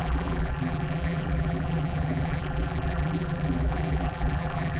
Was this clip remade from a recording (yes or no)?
yes